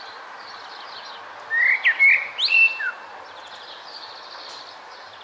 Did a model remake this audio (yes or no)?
no